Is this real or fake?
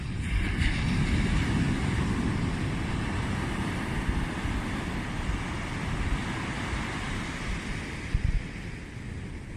real